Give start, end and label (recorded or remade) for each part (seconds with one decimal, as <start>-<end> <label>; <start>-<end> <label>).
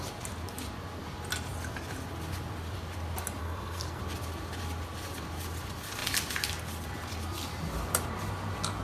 0.0-3.4 recorded; 3.4-4.0 remade; 4.0-8.8 recorded